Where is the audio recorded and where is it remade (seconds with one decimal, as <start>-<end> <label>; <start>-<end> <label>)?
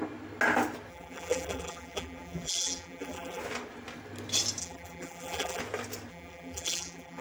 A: 0.0-0.9 recorded; 0.9-3.4 remade; 3.4-4.6 recorded; 4.6-5.6 remade; 5.6-6.1 recorded; 6.1-7.2 remade